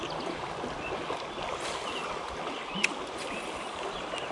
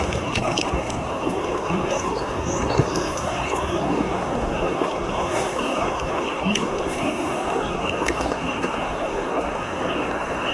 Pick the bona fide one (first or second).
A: first